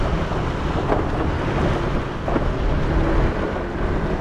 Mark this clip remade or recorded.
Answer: recorded